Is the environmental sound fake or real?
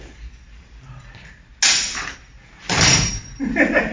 real